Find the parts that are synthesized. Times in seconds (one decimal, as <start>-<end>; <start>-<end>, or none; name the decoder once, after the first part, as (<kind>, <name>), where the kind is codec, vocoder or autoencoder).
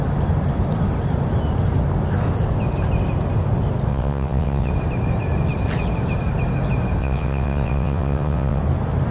3.9-4.7 (vocoder, WaveNeXt); 7.0-8.6